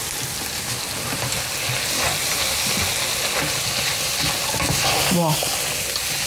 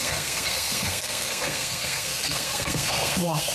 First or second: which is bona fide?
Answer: first